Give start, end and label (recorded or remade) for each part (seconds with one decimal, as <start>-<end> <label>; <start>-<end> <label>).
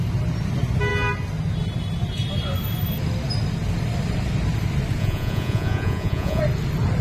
0.0-5.0 recorded; 5.0-6.4 remade; 6.4-7.0 recorded